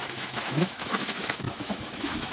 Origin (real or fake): fake